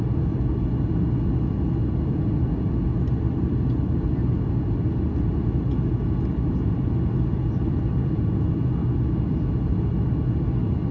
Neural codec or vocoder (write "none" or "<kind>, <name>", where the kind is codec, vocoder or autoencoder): none